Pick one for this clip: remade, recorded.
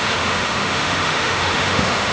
remade